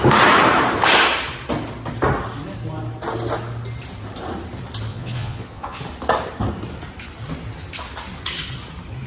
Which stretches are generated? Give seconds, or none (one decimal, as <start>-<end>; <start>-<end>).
4.9-5.8

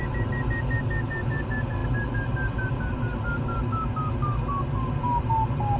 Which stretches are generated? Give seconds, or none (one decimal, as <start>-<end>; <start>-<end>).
none